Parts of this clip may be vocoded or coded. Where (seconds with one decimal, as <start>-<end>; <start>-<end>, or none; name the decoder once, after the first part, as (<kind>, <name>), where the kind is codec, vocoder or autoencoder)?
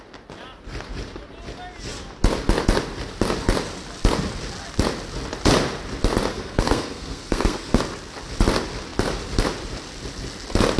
6.3-7.8 (codec, SNAC)